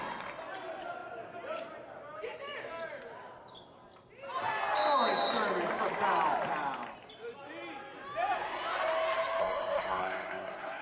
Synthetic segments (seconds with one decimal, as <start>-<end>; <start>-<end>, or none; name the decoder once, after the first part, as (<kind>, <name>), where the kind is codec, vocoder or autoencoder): 9.4-10.8 (codec, SNAC)